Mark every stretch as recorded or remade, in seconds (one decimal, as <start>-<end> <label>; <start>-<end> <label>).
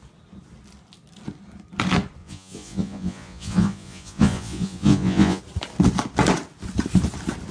0.0-2.2 recorded; 2.2-5.4 remade; 5.4-7.5 recorded